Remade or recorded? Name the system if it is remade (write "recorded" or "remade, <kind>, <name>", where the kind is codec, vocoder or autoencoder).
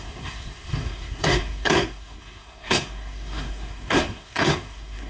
remade, codec, SNAC